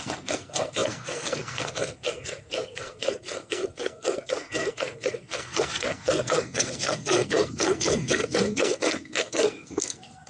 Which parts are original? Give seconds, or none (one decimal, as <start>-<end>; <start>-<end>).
none